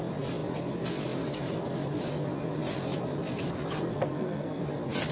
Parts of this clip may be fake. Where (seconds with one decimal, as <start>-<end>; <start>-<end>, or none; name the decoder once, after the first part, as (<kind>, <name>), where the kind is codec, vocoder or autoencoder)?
3.9-4.6 (codec, SNAC)